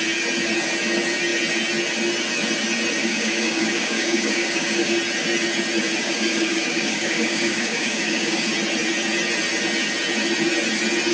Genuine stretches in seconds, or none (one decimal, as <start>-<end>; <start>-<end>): 0.0-3.0; 5.0-6.0; 8.5-11.1